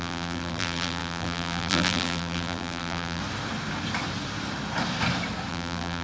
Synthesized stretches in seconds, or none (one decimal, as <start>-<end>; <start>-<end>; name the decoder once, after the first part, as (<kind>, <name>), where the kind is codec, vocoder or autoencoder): 0.0-3.2 (vocoder, BigVGAN v2); 5.5-6.0